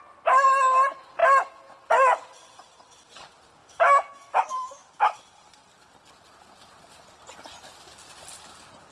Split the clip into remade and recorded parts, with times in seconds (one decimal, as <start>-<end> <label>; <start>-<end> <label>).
0.0-3.6 recorded; 3.6-5.2 remade; 5.2-8.9 recorded